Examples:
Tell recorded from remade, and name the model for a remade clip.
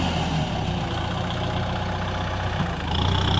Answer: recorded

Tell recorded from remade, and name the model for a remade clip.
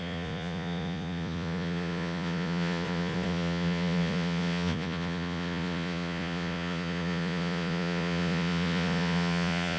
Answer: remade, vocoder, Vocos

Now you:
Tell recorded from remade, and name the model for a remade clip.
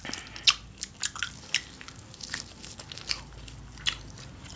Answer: recorded